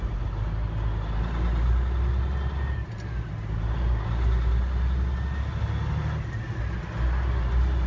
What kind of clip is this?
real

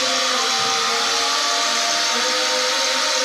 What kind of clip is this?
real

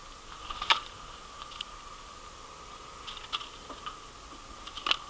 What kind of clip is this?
real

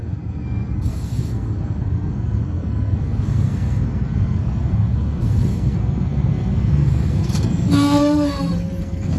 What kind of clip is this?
fake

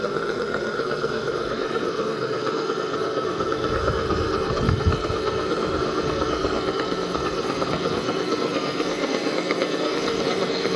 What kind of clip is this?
fake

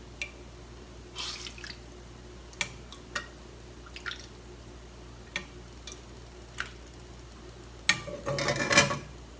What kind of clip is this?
real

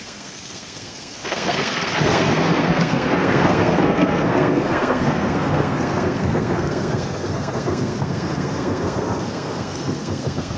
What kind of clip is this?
fake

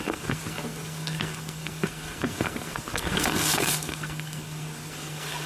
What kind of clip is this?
fake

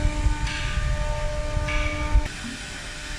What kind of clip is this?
real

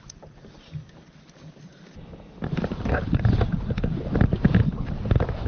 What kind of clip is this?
real